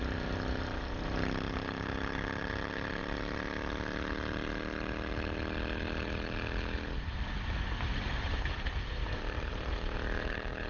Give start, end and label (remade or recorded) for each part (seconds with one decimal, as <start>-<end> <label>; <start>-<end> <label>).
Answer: 0.0-3.0 remade; 3.0-7.5 recorded; 7.5-10.7 remade